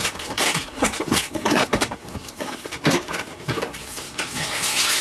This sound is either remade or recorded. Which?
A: remade